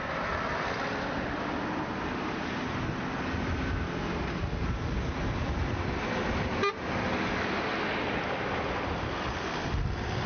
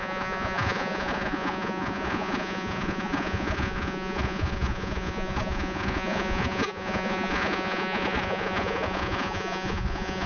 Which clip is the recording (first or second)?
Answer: first